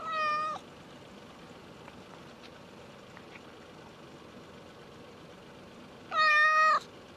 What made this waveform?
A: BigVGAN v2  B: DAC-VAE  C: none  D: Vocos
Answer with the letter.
C